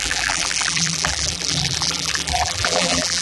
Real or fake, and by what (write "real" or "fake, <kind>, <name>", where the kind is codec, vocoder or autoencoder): fake, vocoder, BigVGAN v2